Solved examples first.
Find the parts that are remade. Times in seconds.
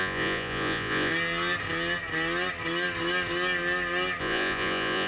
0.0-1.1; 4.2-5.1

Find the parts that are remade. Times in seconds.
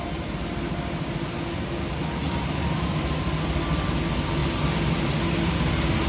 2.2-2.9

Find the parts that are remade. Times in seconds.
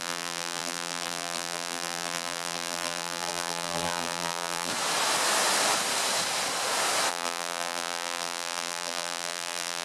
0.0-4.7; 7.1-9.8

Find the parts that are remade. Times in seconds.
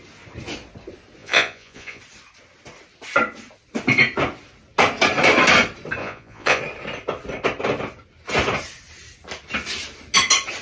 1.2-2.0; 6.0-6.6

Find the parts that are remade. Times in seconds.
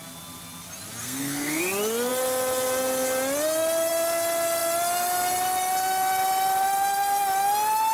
1.0-1.6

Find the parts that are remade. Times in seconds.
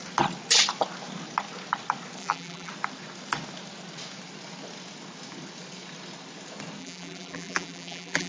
2.2-2.7; 6.8-8.3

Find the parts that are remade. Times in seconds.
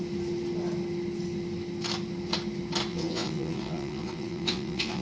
2.9-5.0